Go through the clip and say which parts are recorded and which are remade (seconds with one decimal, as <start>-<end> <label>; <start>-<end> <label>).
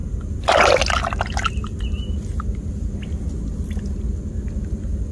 0.0-5.1 recorded